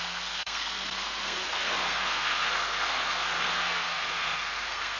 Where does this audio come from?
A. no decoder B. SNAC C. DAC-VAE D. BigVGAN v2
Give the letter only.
B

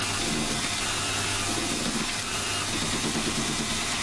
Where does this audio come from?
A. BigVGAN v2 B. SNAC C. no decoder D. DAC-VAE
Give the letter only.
C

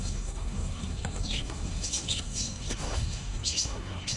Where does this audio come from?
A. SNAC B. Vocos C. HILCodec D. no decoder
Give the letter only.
A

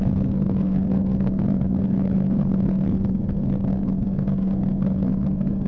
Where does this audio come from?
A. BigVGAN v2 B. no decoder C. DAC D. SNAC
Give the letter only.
D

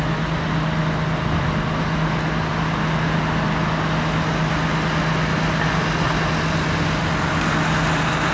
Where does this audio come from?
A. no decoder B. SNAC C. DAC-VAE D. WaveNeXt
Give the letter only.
A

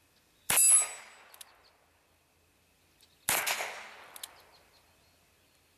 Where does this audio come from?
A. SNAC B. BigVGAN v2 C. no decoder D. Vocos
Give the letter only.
C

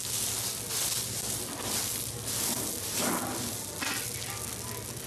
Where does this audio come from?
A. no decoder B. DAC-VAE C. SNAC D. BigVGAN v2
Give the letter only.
A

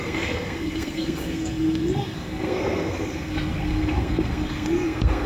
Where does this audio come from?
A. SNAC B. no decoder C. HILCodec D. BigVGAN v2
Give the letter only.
A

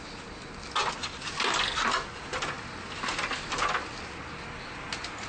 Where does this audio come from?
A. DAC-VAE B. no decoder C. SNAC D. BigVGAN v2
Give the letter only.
B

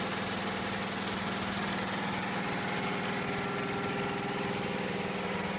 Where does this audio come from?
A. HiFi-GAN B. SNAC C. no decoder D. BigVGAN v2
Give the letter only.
C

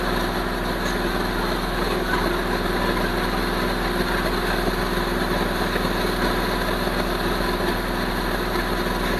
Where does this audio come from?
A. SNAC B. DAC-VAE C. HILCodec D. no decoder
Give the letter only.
D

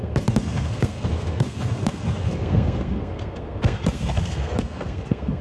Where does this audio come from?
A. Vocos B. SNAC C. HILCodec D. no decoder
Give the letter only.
B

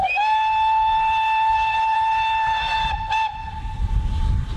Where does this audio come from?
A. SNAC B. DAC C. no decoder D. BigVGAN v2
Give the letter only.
C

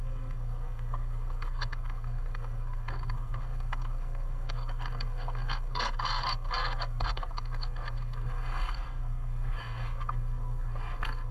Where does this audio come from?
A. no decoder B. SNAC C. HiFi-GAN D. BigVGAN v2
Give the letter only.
B